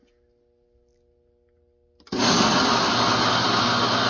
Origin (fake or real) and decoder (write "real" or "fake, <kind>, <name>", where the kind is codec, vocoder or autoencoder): real